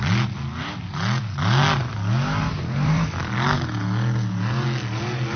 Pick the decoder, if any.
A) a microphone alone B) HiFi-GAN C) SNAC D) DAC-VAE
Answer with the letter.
A